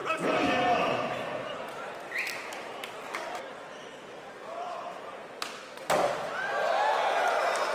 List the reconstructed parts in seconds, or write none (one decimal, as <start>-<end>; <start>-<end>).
none